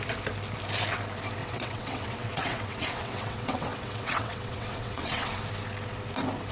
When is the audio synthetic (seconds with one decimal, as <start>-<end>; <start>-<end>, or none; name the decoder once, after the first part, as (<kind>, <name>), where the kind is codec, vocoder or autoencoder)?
1.4-5.3 (vocoder, WaveNeXt)